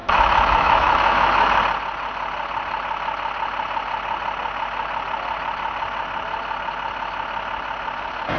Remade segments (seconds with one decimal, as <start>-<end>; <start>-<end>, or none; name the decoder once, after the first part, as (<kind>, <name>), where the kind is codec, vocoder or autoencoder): 0.0-1.6 (autoencoder, DAC-VAE)